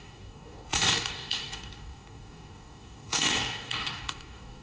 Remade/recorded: remade